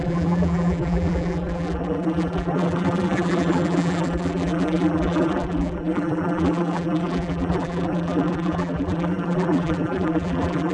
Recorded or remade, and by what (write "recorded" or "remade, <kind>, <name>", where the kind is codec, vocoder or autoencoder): remade, vocoder, BigVGAN v2